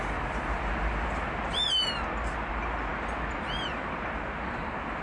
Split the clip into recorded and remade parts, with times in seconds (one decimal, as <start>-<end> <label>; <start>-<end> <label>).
0.0-5.0 recorded